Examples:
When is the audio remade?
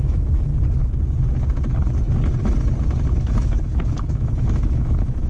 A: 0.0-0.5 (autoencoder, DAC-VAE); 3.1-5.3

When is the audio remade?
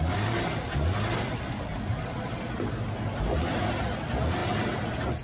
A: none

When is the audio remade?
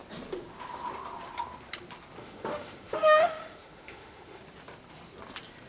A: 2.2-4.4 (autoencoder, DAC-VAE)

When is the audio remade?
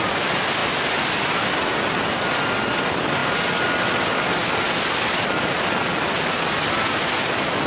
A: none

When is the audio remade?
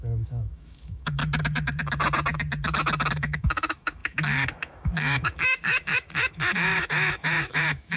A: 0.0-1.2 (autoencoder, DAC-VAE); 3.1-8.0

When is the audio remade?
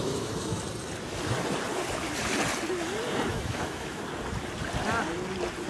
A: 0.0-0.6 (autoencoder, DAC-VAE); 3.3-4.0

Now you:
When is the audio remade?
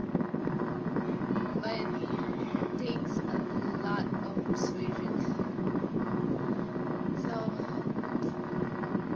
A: 1.5-5.6 (autoencoder, DAC-VAE); 7.2-8.7